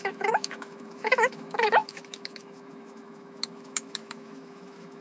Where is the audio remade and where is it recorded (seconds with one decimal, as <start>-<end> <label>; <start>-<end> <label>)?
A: 0.0-5.0 remade